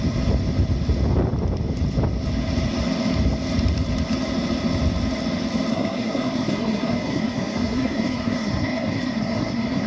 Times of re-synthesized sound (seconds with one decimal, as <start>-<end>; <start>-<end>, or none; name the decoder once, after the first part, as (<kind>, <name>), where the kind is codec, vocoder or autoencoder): 5.7-9.9 (codec, SNAC)